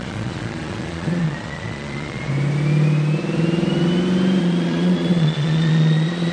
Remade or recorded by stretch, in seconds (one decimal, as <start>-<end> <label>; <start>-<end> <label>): 0.0-2.3 remade; 2.3-4.4 recorded; 4.4-6.3 remade